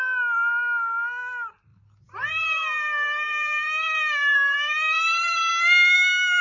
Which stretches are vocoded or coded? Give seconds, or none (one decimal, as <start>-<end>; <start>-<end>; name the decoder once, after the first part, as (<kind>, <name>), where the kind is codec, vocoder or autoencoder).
1.7-5.5 (vocoder, BigVGAN v2)